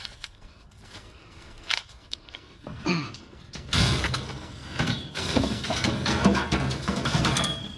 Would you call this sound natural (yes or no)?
no